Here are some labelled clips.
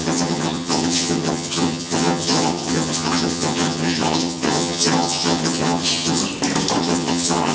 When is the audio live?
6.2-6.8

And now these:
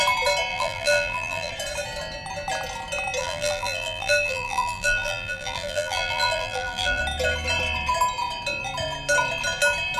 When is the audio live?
0.0-0.5; 1.5-3.2; 7.0-10.0

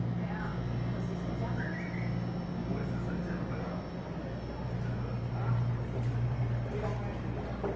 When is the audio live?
0.0-7.8

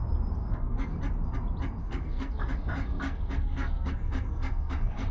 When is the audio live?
0.0-0.4; 1.0-1.8